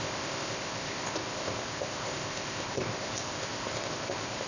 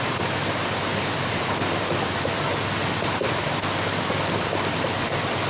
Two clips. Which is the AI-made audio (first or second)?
first